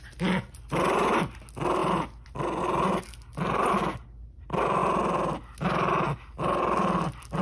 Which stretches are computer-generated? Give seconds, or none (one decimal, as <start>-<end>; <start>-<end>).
none